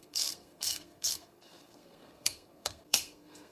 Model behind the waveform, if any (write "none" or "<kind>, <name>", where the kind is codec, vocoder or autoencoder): codec, SNAC